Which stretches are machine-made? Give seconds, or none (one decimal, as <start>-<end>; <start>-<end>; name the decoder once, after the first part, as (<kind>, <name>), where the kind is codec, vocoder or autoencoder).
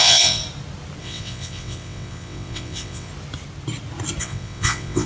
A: 0.0-0.4 (vocoder, WaveNeXt); 1.0-3.1; 4.2-5.1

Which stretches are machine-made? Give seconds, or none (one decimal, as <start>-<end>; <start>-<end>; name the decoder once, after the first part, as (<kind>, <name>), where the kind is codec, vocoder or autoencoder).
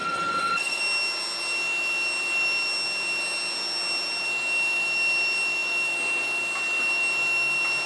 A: 0.0-0.8 (vocoder, WaveNeXt)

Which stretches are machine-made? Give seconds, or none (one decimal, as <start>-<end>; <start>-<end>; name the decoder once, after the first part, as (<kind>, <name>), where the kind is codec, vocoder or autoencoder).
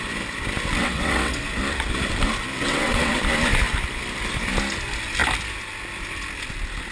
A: 0.8-1.4 (vocoder, WaveNeXt); 2.7-3.2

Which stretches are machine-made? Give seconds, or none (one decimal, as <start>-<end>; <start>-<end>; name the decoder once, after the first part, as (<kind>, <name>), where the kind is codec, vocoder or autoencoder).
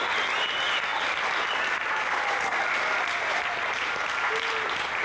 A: none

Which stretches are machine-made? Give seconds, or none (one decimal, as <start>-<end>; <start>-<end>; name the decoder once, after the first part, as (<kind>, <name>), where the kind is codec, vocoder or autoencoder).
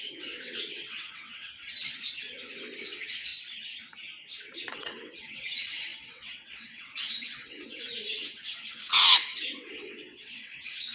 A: 0.0-1.5 (vocoder, WaveNeXt); 2.8-3.3; 4.7-10.9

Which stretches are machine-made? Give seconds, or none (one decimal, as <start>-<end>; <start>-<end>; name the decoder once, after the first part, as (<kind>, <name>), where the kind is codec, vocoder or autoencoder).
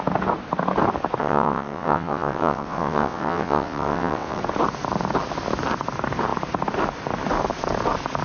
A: 1.2-4.4 (vocoder, WaveNeXt)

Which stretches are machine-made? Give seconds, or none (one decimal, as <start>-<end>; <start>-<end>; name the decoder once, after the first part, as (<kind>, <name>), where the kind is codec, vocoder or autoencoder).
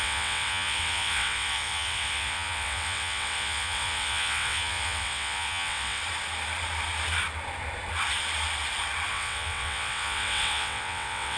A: 0.0-6.0 (vocoder, WaveNeXt); 9.1-11.4